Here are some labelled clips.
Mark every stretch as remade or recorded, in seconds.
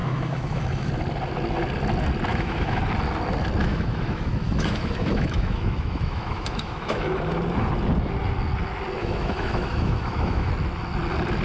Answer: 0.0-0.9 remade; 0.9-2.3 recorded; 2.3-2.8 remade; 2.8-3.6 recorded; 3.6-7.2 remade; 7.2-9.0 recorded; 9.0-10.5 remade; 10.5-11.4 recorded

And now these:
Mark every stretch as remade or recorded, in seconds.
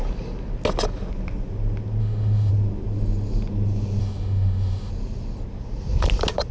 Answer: 0.0-2.0 recorded; 2.0-2.5 remade; 2.5-4.0 recorded; 4.0-4.9 remade; 4.9-6.5 recorded